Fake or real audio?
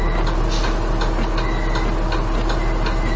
real